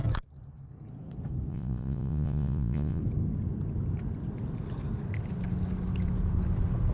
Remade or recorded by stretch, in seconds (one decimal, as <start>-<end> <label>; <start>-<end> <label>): 0.0-1.5 recorded; 1.5-3.0 remade; 3.0-6.9 recorded